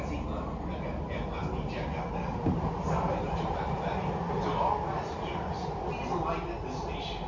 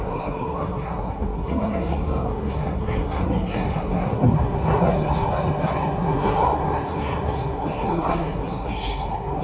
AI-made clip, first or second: second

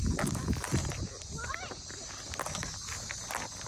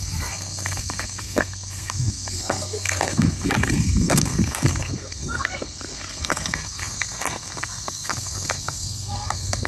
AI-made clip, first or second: second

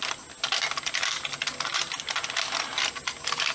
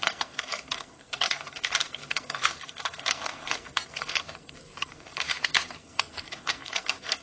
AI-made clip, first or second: second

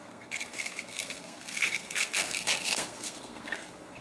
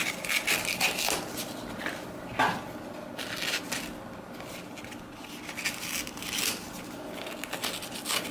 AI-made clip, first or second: first